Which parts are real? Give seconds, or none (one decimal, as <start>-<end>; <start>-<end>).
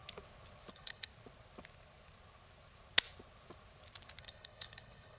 0.0-0.7; 1.1-4.2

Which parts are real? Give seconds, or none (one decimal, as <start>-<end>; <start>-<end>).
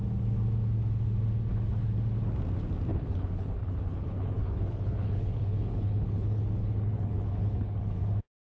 0.0-2.9; 8.0-8.6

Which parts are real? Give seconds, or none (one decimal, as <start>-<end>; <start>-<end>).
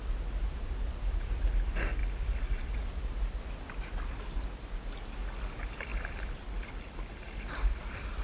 0.0-8.2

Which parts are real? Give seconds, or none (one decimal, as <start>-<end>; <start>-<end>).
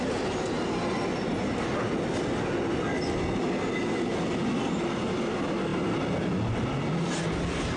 0.0-7.8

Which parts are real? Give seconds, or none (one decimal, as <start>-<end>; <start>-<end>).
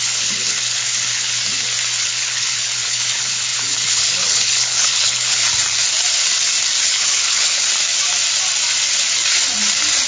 1.4-2.0; 5.4-6.8; 7.6-10.1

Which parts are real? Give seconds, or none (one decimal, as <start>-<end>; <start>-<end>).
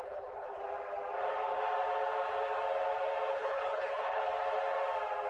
0.6-3.3; 4.2-5.3